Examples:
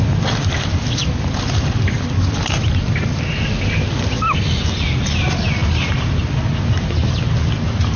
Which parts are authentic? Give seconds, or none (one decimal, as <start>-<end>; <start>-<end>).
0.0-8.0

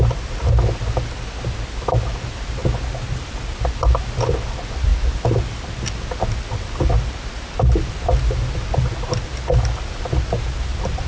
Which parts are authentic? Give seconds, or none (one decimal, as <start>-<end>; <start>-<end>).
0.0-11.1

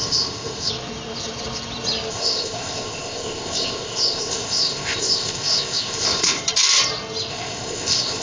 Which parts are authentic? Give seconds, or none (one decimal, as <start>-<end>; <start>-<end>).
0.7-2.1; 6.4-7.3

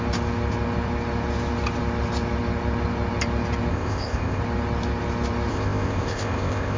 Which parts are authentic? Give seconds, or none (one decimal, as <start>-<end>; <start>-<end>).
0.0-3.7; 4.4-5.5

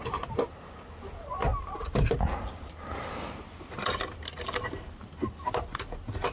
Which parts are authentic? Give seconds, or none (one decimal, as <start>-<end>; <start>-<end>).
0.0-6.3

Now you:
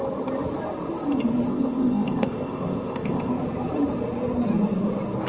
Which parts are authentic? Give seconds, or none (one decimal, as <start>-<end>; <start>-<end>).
0.0-1.5; 3.3-5.3